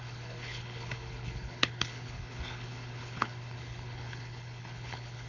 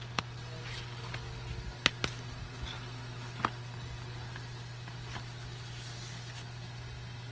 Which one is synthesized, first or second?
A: first